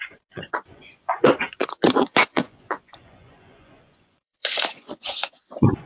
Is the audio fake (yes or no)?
yes